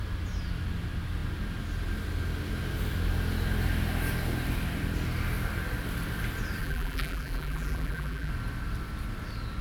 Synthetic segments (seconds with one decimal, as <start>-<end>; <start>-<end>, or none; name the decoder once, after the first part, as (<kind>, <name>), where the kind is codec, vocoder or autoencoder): 6.6-8.3 (vocoder, BigVGAN v2)